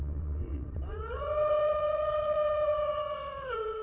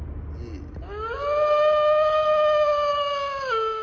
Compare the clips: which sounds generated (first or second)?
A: first